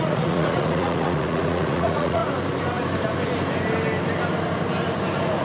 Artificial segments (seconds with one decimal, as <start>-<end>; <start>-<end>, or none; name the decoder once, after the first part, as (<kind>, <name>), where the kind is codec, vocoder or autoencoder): 0.0-2.2 (vocoder, Vocos)